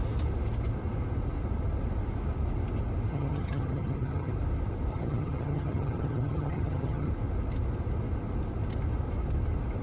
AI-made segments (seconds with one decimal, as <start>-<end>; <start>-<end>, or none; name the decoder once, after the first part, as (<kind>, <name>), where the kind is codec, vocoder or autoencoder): 3.1-4.3 (vocoder, HiFi-GAN); 4.9-7.1